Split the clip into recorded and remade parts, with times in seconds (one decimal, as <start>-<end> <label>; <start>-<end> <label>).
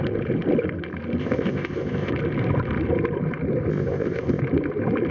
0.0-1.2 recorded; 1.2-2.1 remade; 2.1-3.7 recorded; 3.7-4.4 remade; 4.4-5.1 recorded